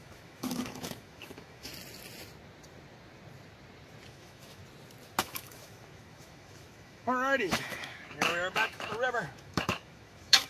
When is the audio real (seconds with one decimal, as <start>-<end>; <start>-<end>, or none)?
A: 1.7-4.1; 4.6-5.2